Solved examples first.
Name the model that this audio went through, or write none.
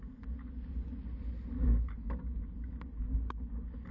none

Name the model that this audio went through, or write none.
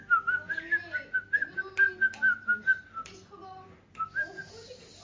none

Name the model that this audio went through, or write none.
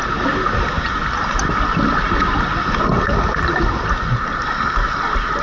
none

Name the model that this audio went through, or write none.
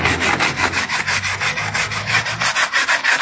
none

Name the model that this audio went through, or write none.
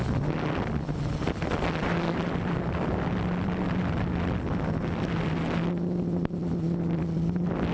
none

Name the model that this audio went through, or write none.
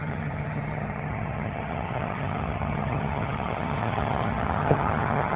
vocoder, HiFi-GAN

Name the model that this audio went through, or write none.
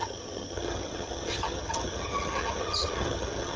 vocoder, HiFi-GAN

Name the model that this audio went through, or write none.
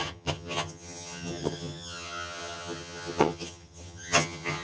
vocoder, HiFi-GAN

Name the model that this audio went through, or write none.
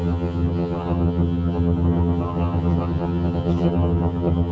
vocoder, HiFi-GAN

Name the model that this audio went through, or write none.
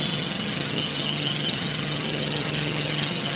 vocoder, HiFi-GAN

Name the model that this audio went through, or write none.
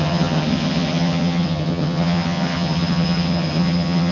vocoder, HiFi-GAN